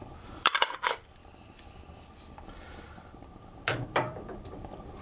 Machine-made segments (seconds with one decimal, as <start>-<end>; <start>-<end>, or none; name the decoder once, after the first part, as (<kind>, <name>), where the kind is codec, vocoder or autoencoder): 0.0-5.0 (vocoder, BigVGAN v2)